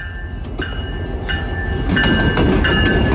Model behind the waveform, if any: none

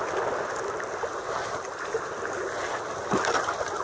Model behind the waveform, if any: none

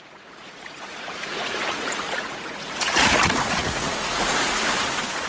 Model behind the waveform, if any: vocoder, Vocos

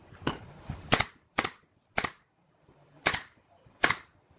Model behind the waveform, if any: none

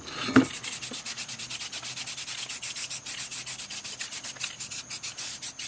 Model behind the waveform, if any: none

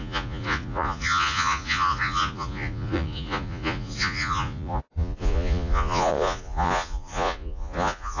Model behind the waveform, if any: vocoder, Vocos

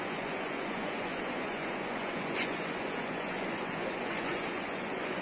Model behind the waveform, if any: vocoder, Vocos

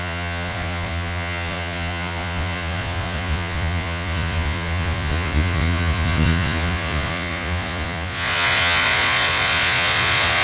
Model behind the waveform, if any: vocoder, Vocos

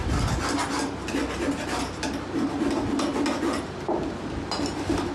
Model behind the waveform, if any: none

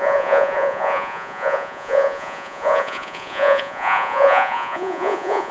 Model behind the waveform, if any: vocoder, Vocos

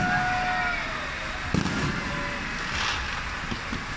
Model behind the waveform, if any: none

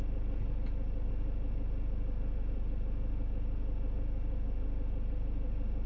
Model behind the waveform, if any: none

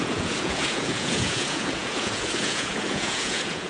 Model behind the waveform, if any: vocoder, Vocos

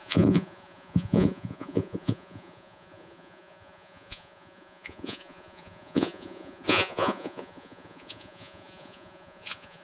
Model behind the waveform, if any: vocoder, Vocos